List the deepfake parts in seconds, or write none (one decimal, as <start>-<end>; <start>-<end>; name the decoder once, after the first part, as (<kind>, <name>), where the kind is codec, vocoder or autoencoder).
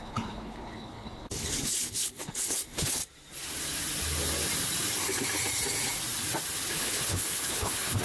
0.0-3.0 (codec, HILCodec); 6.7-8.0